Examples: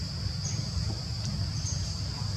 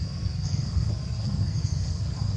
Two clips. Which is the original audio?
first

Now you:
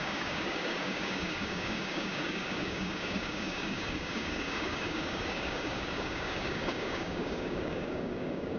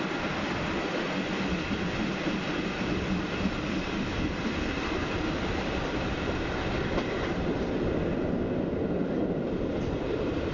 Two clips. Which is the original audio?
second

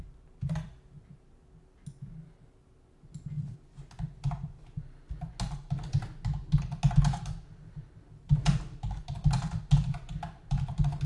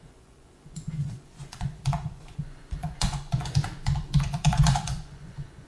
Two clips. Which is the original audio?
first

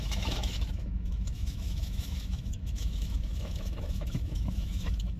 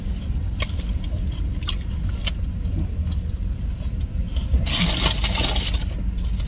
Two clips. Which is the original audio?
second